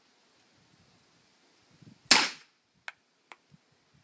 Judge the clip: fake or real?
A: real